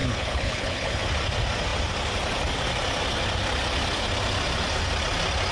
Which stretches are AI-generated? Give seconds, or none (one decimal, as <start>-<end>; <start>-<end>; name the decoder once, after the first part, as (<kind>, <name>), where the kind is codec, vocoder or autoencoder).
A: 0.0-1.0 (codec, HILCodec)